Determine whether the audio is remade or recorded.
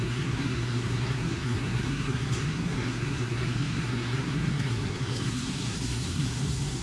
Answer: remade